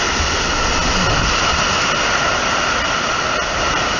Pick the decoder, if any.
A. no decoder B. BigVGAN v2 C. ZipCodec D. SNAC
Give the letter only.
A